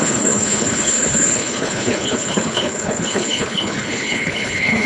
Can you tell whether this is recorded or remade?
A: remade